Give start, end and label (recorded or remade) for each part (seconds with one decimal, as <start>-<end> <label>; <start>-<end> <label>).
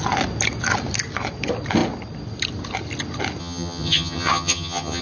0.0-3.4 recorded; 3.4-5.0 remade